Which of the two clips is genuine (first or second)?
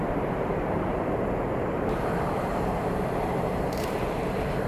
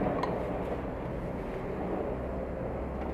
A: second